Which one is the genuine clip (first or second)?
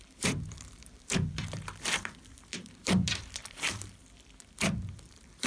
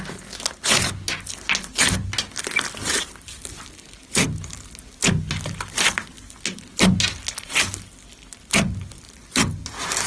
second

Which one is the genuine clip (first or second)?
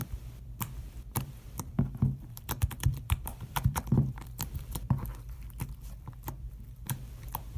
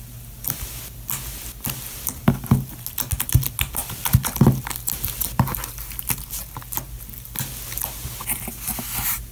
second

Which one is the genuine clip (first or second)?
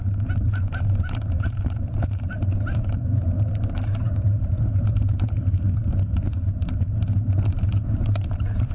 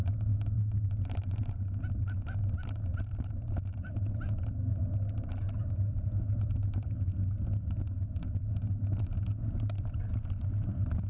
second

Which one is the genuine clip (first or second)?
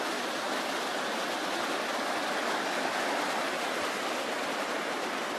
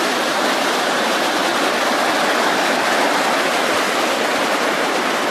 first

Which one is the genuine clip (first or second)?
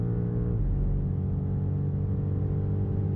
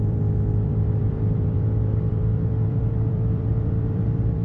first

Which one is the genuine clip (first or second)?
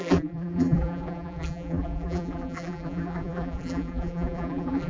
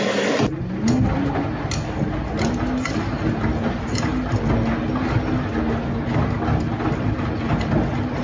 second